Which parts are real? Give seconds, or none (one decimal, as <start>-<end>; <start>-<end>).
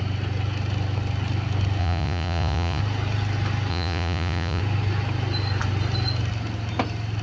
0.0-1.8; 2.8-3.7; 4.6-7.2